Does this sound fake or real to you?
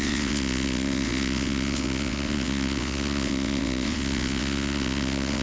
fake